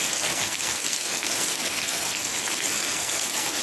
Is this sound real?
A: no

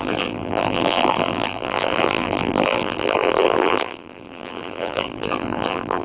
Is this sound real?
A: no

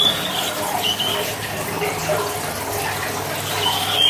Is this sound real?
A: yes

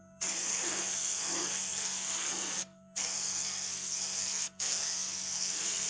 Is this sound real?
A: no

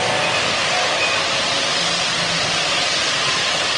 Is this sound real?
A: yes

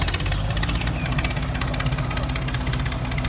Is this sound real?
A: yes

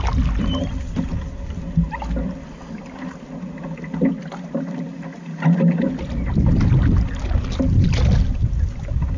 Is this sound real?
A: yes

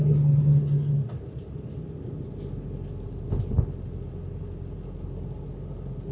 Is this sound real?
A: yes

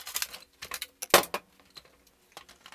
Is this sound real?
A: yes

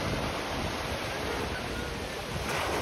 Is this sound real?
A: yes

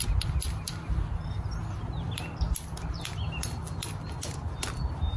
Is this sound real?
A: yes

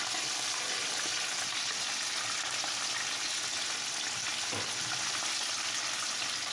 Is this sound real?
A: yes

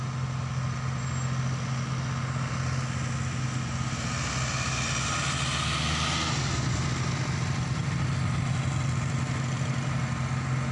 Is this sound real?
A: yes